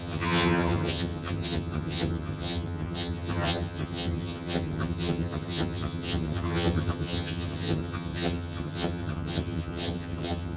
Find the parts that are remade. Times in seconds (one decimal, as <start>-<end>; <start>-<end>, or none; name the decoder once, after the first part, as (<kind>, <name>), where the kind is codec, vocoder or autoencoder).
0.0-10.6 (vocoder, HiFi-GAN)